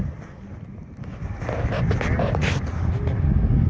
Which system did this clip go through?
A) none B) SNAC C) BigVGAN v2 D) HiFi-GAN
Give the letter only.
A